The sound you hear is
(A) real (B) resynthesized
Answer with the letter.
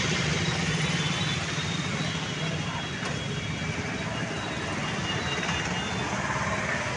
A